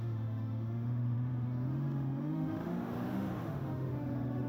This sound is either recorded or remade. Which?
remade